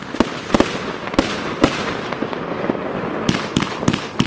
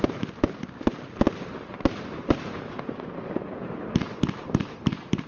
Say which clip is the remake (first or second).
second